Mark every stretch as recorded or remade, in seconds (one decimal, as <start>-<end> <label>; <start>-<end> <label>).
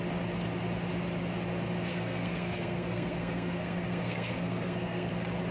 0.0-1.9 recorded; 1.9-5.1 remade; 5.1-5.5 recorded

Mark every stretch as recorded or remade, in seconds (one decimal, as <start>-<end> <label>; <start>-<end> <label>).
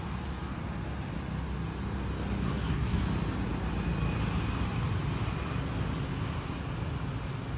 0.0-2.4 recorded; 2.4-3.0 remade; 3.0-7.6 recorded